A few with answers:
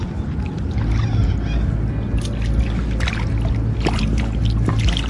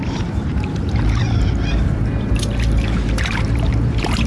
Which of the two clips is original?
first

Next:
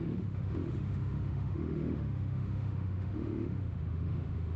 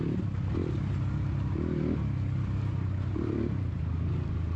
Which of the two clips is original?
second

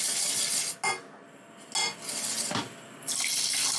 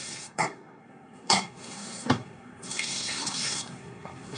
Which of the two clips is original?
first